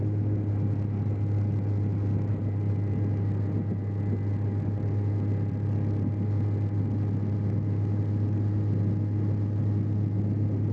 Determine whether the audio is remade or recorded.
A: recorded